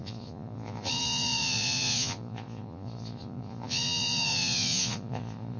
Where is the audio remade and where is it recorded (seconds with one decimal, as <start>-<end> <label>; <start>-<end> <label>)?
0.0-5.6 remade